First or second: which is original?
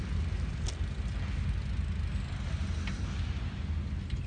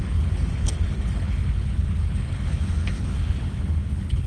first